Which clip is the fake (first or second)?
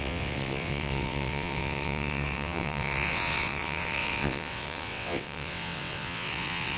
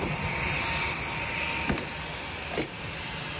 first